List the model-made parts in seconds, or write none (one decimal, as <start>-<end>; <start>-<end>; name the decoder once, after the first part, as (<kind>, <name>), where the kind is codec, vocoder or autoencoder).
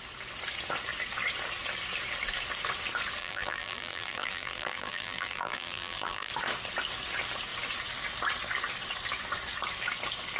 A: 3.2-6.3 (vocoder, BigVGAN v2)